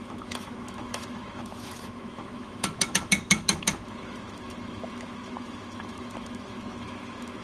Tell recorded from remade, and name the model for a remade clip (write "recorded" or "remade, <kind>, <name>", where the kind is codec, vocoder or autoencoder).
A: remade, autoencoder, DAC-VAE